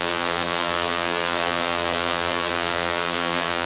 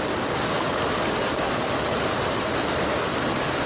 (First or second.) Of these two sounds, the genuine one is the second